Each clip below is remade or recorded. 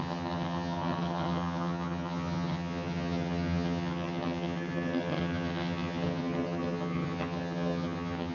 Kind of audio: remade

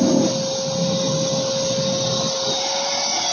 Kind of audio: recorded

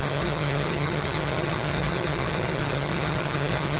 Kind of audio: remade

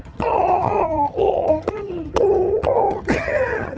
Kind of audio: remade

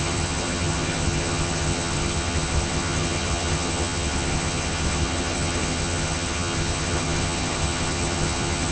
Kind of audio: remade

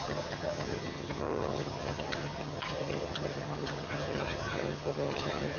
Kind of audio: remade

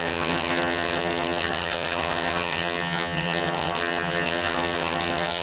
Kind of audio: remade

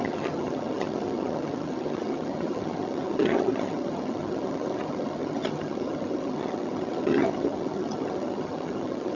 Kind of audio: remade